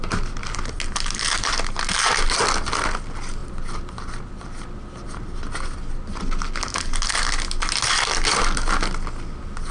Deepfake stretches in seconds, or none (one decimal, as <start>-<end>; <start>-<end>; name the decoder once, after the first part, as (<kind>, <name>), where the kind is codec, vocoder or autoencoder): none